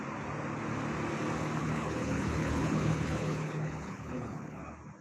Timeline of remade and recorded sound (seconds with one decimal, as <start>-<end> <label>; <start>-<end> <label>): 0.0-1.6 recorded; 1.6-4.6 remade; 4.6-5.0 recorded